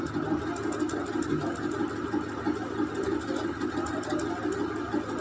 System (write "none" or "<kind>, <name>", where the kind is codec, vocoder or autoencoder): none